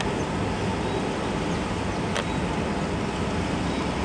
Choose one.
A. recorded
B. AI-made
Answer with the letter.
A